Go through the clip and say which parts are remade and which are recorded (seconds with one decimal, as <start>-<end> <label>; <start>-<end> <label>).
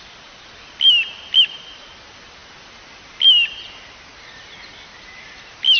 0.0-5.8 recorded